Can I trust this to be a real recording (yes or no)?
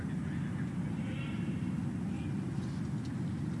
yes